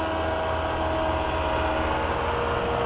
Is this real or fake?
real